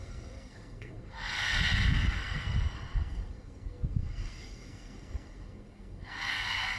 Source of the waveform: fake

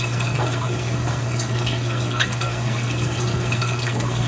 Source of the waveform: fake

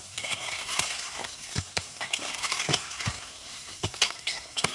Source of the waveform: fake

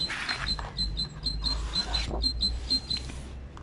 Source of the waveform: real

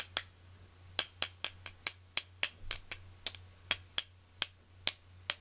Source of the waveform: real